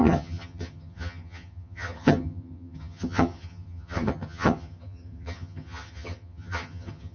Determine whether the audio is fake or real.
fake